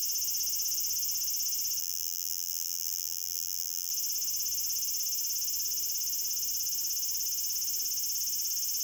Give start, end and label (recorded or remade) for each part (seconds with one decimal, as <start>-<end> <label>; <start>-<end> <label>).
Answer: 0.0-1.8 recorded; 1.8-3.9 remade; 3.9-8.8 recorded